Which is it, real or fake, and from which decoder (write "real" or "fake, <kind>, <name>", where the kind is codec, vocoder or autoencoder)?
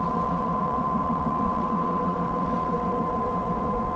fake, vocoder, WaveNeXt